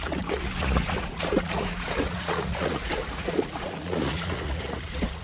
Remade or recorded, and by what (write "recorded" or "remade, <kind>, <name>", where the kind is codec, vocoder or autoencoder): remade, vocoder, Vocos